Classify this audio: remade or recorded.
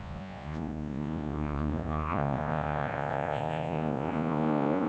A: remade